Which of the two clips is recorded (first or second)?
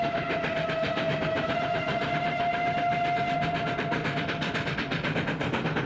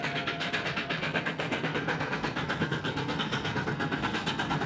first